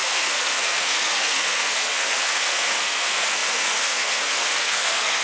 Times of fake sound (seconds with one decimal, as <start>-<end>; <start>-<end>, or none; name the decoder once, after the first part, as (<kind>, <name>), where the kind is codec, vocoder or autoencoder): 0.0-5.2 (codec, SNAC)